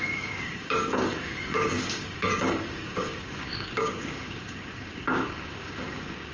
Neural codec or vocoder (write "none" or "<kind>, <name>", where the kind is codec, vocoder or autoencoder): codec, DAC